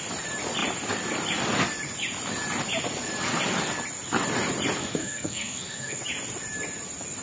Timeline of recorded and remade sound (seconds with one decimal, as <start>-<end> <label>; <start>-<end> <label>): 0.0-4.8 recorded; 4.8-6.0 remade; 6.0-7.2 recorded